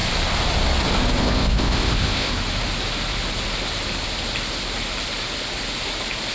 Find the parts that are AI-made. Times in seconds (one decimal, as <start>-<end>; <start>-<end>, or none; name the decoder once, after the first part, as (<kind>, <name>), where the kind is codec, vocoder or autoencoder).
1.2-2.3 (codec, ZipCodec)